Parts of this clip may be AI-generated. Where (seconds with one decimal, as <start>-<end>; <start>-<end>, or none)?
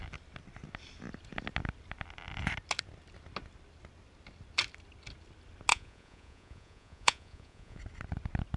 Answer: 5.7-7.8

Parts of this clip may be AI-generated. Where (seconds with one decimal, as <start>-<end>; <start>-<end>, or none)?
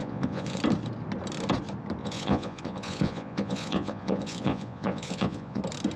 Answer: 0.0-0.6; 2.0-5.6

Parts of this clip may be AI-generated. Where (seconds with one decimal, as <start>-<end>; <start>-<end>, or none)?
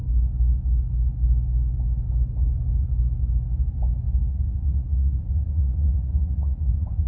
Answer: 4.3-7.1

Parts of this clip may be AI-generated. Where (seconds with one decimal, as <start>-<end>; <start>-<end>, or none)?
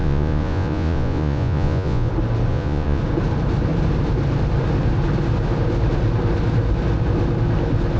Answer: 0.0-2.1; 2.5-3.0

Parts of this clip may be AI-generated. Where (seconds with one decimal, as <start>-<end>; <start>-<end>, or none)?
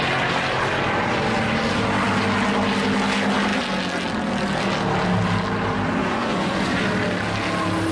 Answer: 6.0-6.8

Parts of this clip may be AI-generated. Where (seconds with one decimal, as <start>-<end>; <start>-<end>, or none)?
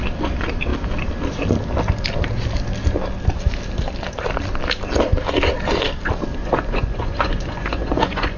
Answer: 6.4-8.4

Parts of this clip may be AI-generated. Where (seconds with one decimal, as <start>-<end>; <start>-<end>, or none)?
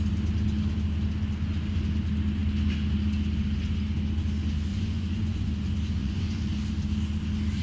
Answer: 4.7-5.5; 6.0-6.6